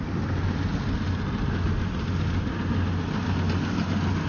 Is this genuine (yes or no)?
yes